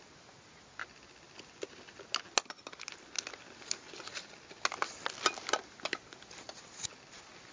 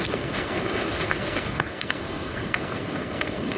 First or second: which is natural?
first